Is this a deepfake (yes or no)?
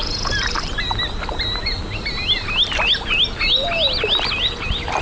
no